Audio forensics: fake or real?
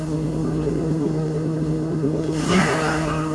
fake